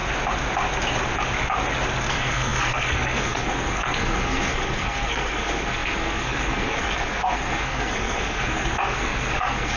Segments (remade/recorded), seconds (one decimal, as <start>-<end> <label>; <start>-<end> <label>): 0.0-2.1 recorded; 2.1-9.8 remade